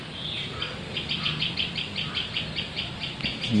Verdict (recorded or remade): recorded